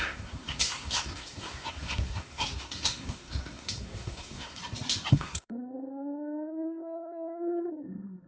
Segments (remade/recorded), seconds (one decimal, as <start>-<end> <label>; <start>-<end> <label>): 0.0-4.6 remade; 4.6-5.1 recorded; 5.1-8.3 remade